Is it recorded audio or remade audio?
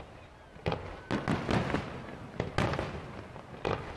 recorded